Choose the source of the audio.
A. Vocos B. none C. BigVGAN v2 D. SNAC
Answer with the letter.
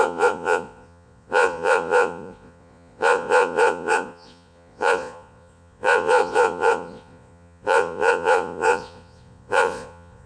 A